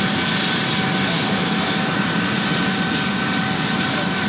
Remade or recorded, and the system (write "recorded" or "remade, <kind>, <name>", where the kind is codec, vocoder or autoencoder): recorded